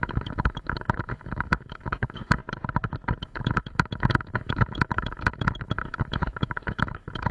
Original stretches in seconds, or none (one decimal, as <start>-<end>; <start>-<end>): 2.4-3.2